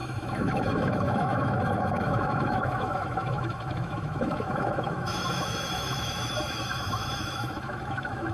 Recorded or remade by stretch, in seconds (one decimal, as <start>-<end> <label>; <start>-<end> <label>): 0.0-8.3 remade